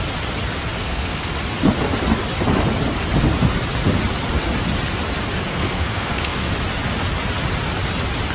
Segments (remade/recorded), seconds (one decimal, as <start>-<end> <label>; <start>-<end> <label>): 0.0-0.8 recorded; 0.8-1.3 remade; 1.3-5.5 recorded; 5.5-6.5 remade; 6.5-8.3 recorded